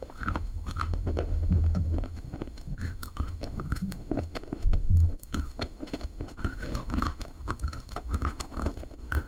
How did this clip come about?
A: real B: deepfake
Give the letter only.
B